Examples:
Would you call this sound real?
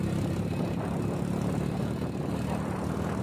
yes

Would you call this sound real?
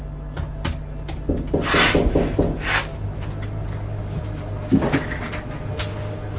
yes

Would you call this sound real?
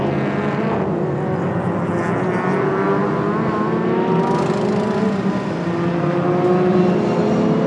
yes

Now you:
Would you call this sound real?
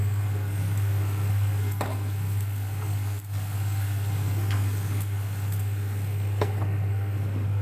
no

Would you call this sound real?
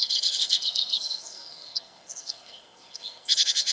no